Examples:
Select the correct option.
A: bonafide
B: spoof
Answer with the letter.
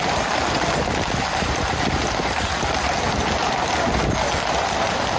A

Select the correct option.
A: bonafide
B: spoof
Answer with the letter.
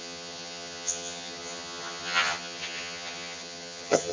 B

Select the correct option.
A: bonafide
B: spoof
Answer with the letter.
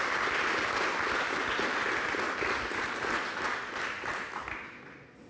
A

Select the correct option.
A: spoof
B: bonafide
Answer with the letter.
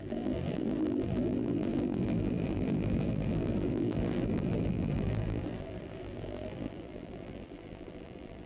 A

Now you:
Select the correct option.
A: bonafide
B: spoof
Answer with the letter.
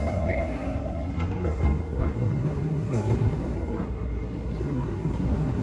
B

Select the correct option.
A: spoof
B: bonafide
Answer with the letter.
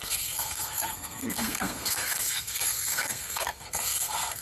A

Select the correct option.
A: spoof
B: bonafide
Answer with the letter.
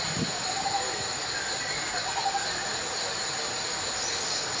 B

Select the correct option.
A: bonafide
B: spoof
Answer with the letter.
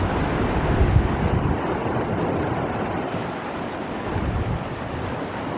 B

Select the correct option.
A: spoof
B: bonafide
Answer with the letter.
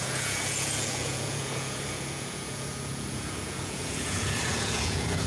A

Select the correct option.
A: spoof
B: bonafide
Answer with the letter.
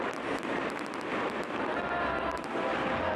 B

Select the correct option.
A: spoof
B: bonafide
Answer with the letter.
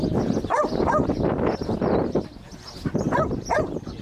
B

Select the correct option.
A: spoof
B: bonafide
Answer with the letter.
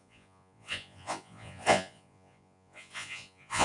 A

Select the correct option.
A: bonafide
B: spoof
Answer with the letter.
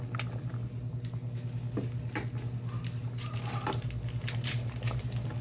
A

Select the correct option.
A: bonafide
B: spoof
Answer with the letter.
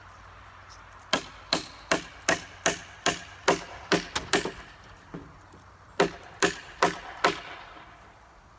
A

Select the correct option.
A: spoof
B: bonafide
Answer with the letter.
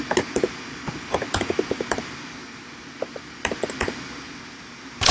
B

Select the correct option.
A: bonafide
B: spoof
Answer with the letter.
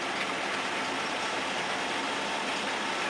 B